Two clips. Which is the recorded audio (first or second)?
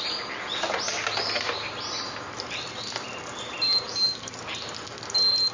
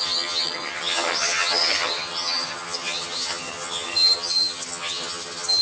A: first